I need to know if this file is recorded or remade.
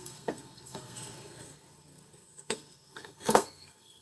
remade